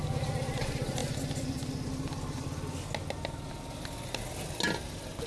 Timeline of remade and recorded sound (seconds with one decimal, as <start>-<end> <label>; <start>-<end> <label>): 0.0-5.3 recorded